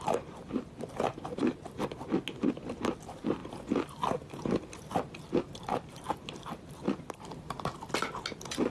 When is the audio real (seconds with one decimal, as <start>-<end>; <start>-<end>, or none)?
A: 0.0-8.7